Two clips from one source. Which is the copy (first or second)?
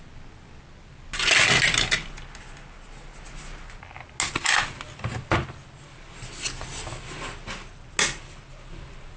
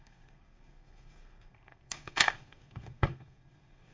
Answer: second